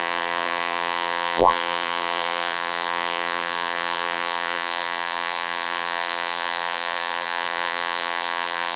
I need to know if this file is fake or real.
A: fake